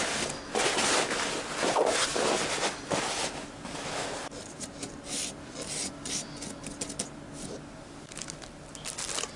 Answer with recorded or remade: recorded